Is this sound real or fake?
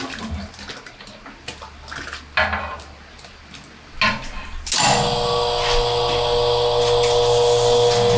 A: real